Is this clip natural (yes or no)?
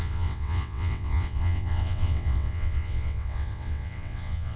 no